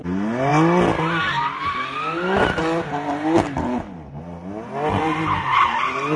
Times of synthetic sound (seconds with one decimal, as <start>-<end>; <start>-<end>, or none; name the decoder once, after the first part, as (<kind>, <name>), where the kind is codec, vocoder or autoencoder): none

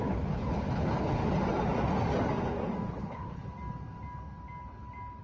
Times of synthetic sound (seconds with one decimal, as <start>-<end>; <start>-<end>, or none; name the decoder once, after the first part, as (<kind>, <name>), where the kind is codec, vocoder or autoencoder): 0.0-1.2 (codec, HILCodec); 3.0-3.4

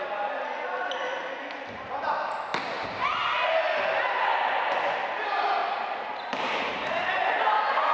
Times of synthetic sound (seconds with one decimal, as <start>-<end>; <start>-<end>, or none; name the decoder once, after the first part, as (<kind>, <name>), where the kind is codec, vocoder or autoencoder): 5.6-7.9 (vocoder, BigVGAN v2)

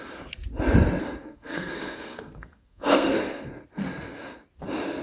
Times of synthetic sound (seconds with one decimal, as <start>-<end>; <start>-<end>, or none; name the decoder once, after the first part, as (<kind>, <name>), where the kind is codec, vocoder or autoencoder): 1.0-3.5 (codec, SNAC)

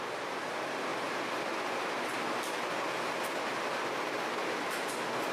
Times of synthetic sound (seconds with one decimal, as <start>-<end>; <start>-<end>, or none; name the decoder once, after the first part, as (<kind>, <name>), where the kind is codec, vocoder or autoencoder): none

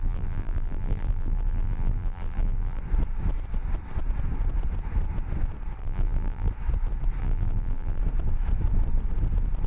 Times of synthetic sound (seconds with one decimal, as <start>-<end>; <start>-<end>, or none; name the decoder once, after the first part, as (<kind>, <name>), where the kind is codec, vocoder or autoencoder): 0.0-2.8 (vocoder, BigVGAN v2); 5.8-6.5; 7.2-8.0

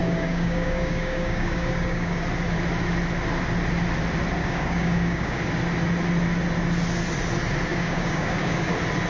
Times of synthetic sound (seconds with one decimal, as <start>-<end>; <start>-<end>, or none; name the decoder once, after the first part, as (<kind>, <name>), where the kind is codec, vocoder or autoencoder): 0.0-2.2 (codec, DAC); 4.4-5.4; 7.7-8.7

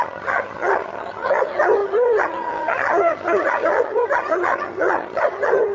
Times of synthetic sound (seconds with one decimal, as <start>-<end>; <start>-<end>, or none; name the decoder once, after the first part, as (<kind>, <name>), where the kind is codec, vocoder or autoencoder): 0.0-5.7 (vocoder, HiFi-GAN)